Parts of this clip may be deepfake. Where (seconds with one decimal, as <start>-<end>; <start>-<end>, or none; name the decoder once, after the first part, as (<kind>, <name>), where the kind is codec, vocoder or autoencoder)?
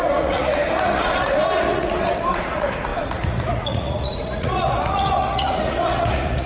0.0-6.5 (vocoder, Vocos)